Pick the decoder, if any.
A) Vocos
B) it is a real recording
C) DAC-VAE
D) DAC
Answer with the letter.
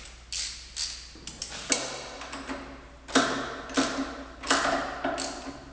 B